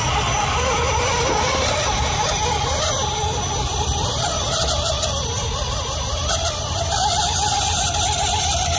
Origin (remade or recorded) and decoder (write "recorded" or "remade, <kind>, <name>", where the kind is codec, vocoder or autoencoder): recorded